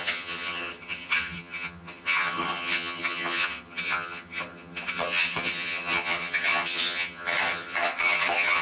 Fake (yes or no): yes